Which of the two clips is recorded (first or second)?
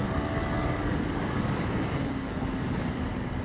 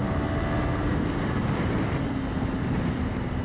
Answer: second